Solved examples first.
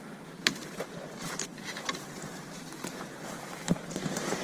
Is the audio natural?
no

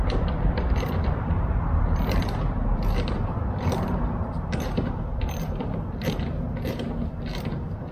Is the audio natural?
no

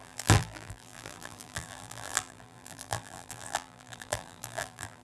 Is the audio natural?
no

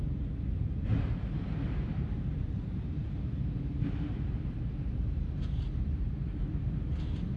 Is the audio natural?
no